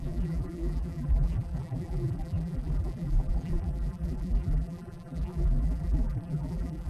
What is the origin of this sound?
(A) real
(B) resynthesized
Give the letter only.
B